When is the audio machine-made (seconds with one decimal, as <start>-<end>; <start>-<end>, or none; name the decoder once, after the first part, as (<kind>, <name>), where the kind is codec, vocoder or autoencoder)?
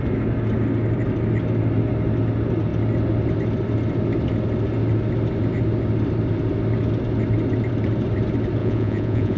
8.6-9.4 (vocoder, Vocos)